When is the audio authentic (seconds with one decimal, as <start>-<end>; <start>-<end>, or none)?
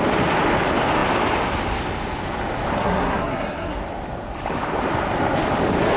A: 0.0-2.8; 3.8-6.0